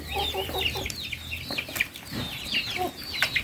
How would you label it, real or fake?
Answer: fake